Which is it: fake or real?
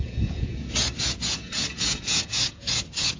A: fake